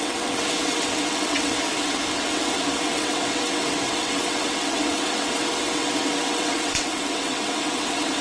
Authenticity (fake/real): fake